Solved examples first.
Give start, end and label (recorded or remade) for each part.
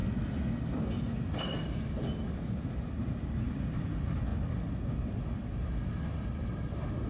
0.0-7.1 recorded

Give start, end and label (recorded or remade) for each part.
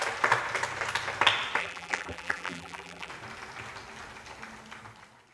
0.0-1.6 recorded; 1.6-3.1 remade; 3.1-5.3 recorded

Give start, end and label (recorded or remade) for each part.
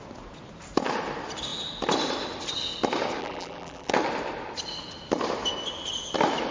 0.0-3.2 recorded; 3.2-3.9 remade; 3.9-6.5 recorded